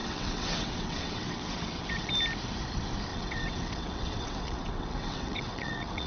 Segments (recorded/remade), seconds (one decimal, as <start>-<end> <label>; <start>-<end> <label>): 0.0-2.1 remade; 2.1-3.1 recorded; 3.1-6.1 remade